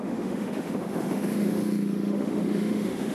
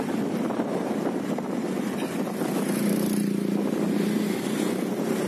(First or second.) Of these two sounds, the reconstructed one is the first